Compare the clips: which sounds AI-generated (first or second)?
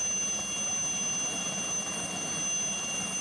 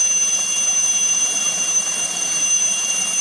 second